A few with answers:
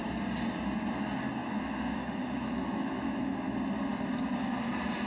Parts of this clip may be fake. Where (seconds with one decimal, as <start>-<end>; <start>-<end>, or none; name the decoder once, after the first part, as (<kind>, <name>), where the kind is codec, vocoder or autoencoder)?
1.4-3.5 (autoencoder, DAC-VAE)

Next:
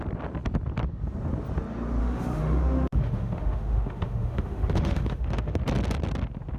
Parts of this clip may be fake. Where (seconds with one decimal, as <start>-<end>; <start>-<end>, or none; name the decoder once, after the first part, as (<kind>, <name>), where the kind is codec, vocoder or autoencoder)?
2.0-5.6 (autoencoder, DAC-VAE)

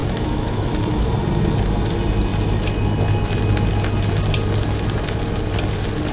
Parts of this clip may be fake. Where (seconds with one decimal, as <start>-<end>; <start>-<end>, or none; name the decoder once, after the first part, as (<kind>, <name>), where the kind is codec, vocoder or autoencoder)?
0.0-1.1 (autoencoder, DAC-VAE)

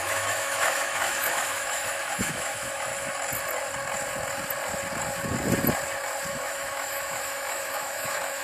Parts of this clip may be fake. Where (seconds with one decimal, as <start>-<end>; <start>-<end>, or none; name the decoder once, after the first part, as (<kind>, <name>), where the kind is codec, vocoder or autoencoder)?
0.0-2.9 (autoencoder, DAC-VAE); 6.3-8.4

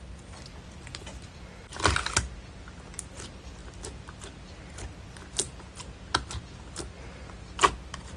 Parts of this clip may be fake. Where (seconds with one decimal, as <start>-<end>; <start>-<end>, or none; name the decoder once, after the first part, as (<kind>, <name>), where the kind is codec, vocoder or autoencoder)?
none